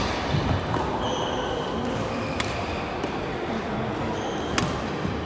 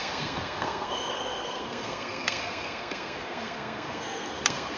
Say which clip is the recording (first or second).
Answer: first